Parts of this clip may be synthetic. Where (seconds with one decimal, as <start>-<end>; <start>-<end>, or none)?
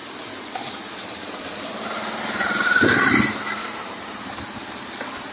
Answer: 3.6-4.4